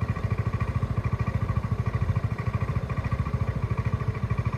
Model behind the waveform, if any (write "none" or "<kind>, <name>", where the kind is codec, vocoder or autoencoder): vocoder, BigVGAN v2